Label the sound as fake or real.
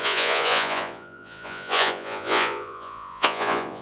fake